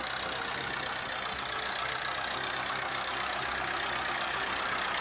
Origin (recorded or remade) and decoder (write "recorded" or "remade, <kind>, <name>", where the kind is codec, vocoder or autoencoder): recorded